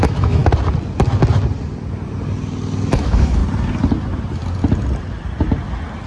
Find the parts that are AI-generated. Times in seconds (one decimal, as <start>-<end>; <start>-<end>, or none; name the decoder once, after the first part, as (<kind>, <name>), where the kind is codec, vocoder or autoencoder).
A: 0.0-0.4 (autoencoder, DAC-VAE); 2.9-3.4